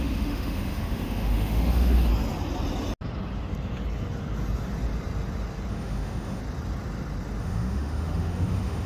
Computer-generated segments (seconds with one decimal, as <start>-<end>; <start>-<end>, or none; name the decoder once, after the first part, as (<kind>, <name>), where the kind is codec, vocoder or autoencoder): 0.0-2.1 (autoencoder, DAC-VAE); 5.7-6.4; 7.4-8.9